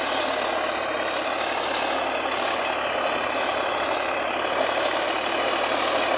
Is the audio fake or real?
real